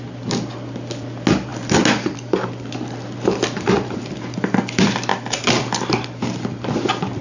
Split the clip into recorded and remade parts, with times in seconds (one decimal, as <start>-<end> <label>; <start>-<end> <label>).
0.0-7.2 recorded